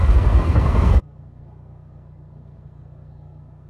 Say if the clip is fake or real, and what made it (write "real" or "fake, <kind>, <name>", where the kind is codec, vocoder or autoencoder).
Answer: fake, codec, SNAC